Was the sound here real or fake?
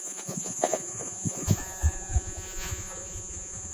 fake